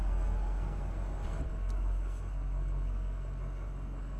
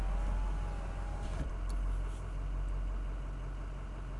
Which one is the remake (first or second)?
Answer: first